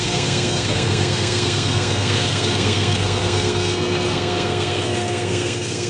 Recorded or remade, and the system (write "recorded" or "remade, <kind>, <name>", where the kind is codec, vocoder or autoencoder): remade, codec, SNAC